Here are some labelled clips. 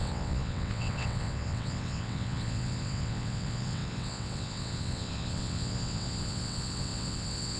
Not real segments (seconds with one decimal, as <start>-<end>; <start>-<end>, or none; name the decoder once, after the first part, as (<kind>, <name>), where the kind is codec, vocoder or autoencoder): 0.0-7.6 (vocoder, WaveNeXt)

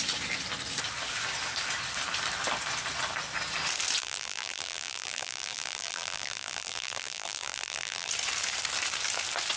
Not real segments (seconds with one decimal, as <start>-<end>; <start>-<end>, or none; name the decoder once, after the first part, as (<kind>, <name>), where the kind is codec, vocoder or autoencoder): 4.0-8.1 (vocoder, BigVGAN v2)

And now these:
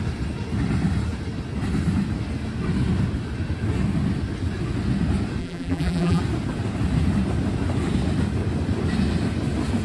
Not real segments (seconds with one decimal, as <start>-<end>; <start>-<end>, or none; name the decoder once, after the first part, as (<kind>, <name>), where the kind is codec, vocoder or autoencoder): 5.4-6.2 (vocoder, BigVGAN v2)

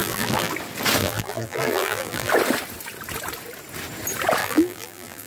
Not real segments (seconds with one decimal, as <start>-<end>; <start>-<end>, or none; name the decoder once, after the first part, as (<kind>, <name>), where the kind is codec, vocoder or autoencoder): 0.0-0.5 (vocoder, BigVGAN v2); 1.0-2.3; 4.4-5.3